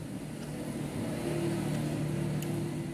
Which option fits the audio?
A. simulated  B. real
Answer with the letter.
B